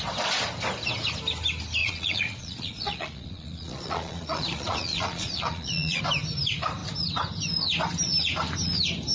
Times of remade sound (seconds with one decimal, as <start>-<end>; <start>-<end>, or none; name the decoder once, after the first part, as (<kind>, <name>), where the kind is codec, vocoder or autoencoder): 1.8-6.0 (vocoder, Vocos)